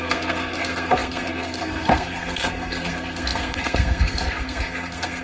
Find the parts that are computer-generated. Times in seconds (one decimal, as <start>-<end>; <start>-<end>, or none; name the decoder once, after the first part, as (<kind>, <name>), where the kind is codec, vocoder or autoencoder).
0.0-5.2 (codec, SNAC)